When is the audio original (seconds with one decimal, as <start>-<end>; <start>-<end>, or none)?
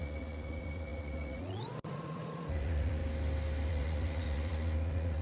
3.0-3.7